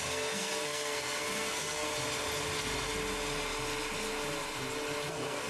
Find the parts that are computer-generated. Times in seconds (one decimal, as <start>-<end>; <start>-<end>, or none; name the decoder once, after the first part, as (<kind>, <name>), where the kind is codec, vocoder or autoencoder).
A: 0.0-1.9 (codec, SNAC); 5.1-5.5